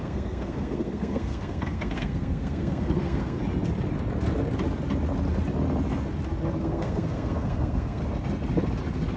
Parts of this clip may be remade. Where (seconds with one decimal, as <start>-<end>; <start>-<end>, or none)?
0.0-3.4; 6.6-8.0